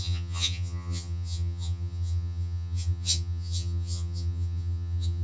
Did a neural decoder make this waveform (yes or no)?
yes